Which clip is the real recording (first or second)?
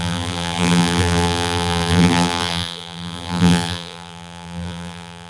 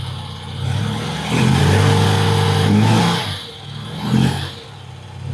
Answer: second